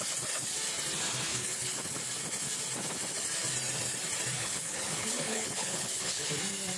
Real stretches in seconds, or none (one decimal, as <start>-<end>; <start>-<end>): 0.0-1.3; 2.1-4.4; 6.3-6.8